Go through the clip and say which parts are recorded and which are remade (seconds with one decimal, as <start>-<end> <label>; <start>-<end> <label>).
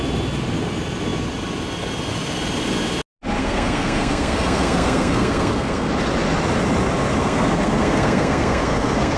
0.0-3.4 recorded; 3.4-5.9 remade; 5.9-7.2 recorded; 7.2-9.2 remade